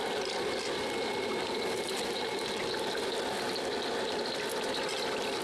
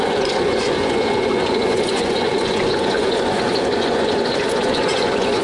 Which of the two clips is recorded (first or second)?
first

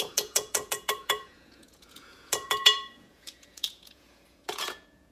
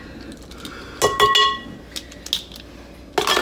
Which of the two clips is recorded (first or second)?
second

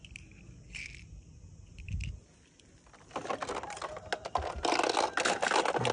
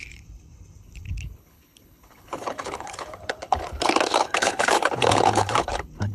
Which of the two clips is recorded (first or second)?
first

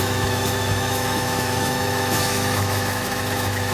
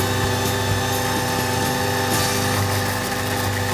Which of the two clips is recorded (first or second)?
second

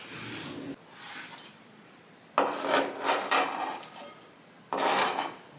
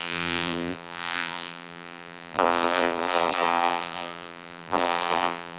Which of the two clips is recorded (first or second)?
first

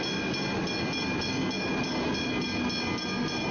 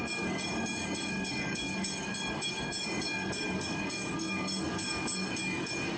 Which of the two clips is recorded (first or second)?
first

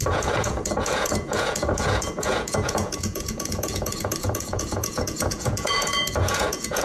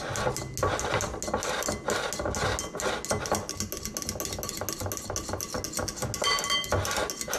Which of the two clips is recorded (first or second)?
second